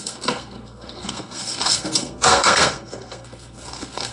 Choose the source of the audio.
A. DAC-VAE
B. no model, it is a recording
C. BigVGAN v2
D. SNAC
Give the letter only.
D